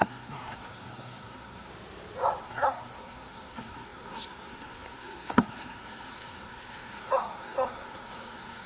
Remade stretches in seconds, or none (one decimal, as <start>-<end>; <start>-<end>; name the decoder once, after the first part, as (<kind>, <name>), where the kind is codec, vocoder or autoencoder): 0.0-1.7 (codec, SNAC); 2.4-8.7